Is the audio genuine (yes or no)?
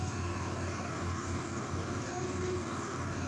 no